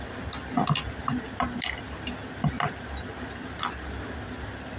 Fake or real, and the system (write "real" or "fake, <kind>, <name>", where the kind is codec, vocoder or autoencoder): real